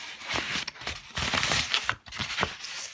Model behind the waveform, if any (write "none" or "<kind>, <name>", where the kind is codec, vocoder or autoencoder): none